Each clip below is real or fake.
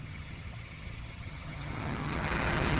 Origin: fake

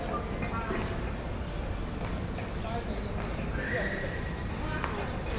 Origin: real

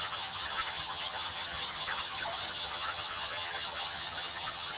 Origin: fake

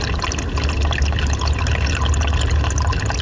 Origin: real